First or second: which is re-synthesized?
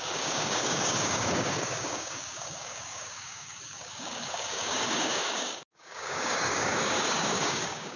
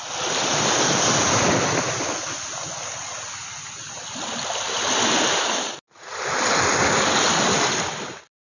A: first